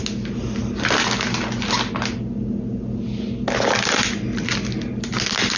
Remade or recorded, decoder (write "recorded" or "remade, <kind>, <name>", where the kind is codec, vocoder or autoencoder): recorded